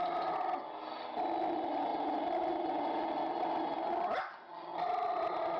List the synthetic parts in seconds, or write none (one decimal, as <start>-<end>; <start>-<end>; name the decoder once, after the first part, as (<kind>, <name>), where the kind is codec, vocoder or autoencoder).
none